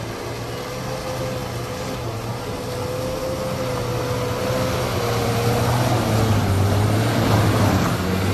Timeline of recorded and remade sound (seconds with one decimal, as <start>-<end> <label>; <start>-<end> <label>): 0.0-8.3 recorded